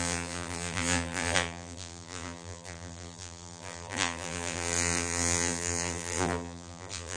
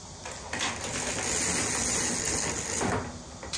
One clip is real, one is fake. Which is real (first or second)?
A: second